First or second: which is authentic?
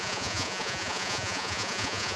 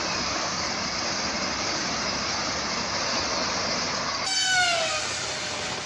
second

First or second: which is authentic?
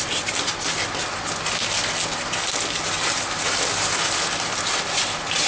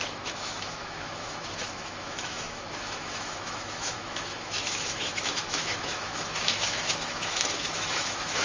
first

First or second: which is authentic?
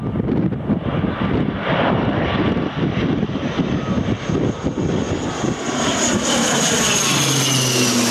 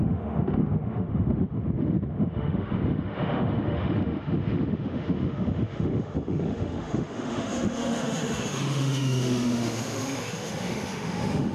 first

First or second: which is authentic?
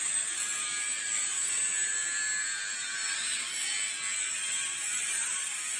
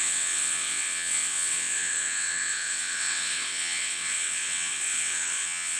first